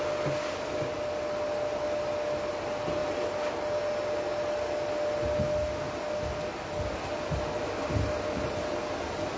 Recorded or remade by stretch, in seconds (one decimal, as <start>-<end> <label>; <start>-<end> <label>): 0.0-9.4 recorded